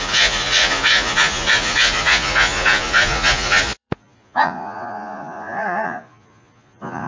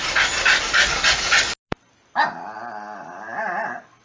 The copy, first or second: first